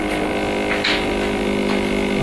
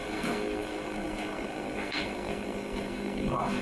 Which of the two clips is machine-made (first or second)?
second